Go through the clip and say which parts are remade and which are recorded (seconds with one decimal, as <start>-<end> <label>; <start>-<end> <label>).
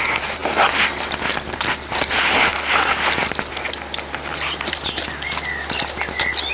0.0-6.5 recorded